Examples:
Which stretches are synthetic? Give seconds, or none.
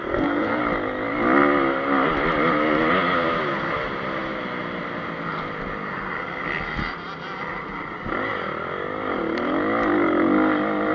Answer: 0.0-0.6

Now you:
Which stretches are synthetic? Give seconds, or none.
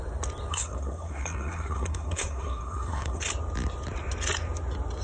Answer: 0.5-3.2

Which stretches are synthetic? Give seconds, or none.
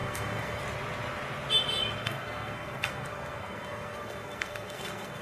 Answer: 0.0-0.6; 2.0-5.2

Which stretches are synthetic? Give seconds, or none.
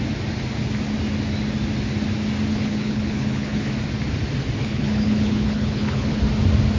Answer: 2.5-3.7; 4.6-6.2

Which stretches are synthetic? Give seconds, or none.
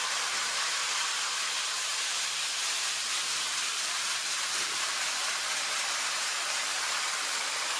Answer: 0.0-0.4; 1.0-7.8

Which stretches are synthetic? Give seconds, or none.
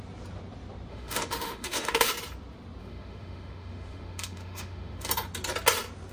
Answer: 0.9-2.1; 2.8-5.1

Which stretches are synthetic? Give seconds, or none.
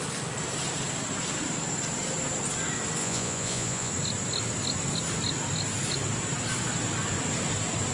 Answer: 3.0-3.9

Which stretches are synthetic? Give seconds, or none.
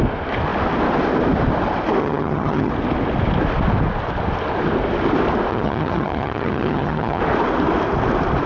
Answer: 2.0-2.7; 5.5-7.2